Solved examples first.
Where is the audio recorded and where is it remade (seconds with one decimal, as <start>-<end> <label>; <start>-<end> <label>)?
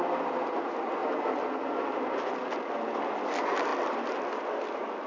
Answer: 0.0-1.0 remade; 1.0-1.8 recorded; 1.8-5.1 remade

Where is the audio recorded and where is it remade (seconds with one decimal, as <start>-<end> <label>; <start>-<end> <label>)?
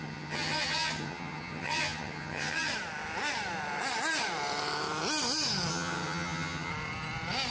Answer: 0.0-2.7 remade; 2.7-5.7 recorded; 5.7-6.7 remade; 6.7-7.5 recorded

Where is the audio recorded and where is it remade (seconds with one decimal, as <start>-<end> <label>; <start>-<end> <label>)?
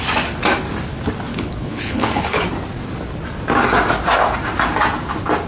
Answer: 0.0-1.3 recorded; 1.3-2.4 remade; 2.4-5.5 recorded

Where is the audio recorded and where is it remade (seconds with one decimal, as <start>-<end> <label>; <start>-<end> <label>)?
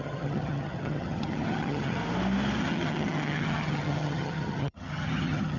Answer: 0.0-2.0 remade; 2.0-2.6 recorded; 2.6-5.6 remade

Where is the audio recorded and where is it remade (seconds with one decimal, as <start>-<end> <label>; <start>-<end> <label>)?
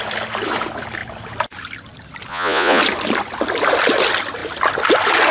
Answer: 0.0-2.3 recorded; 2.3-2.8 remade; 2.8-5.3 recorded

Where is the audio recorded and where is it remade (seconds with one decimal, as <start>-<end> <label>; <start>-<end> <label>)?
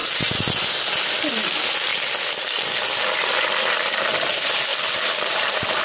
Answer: 0.0-1.0 recorded; 1.0-5.8 remade